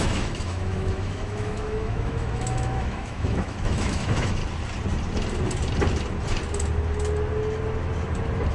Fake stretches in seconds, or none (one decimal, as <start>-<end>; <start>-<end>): 0.0-4.4